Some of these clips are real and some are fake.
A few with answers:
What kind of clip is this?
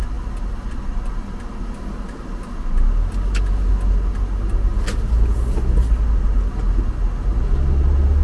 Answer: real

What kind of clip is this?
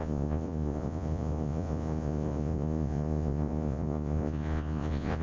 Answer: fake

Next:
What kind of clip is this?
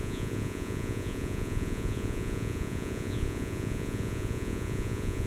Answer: fake